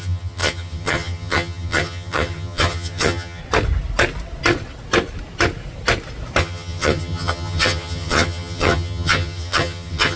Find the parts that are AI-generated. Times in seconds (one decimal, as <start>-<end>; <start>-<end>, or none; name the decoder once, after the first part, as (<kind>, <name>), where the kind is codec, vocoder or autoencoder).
0.0-3.4 (vocoder, HiFi-GAN); 6.4-10.2